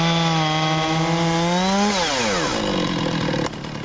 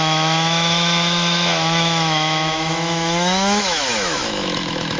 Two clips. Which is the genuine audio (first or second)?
first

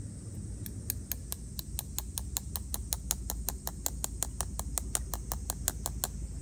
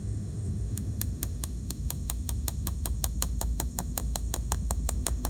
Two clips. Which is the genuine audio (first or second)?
first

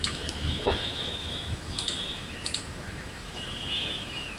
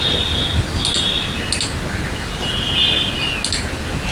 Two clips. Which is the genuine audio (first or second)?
second